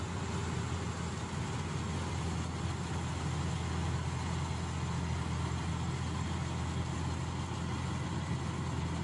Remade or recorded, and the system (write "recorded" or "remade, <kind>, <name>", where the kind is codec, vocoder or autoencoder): recorded